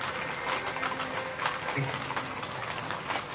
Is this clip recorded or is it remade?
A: recorded